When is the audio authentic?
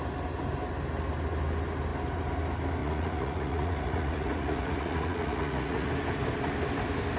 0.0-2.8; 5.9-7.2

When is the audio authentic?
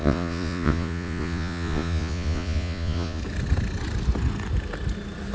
3.2-5.3